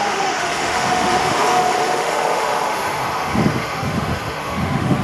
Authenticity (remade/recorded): remade